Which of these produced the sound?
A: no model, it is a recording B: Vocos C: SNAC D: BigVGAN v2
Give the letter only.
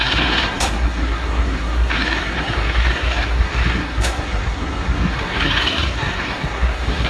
C